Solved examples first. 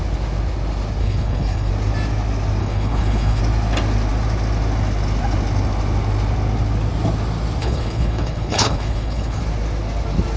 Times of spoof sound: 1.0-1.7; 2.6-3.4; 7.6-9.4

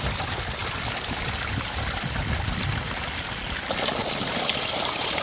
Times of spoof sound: none